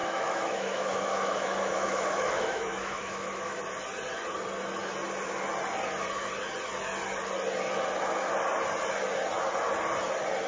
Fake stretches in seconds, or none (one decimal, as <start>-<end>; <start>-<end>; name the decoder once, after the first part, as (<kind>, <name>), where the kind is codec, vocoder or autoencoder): 0.0-3.6 (autoencoder, DAC-VAE)